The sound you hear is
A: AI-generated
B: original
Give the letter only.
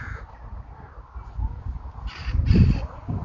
B